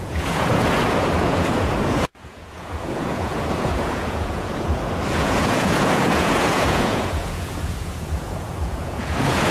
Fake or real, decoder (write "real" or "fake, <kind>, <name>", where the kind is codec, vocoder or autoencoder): fake, vocoder, Vocos